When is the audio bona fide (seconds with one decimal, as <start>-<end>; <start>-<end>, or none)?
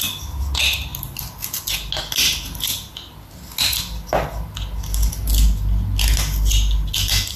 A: 0.0-7.4